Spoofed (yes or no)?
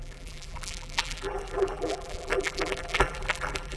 yes